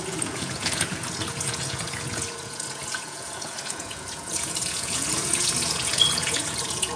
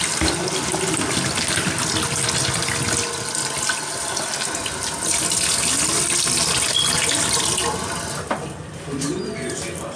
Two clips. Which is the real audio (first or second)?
second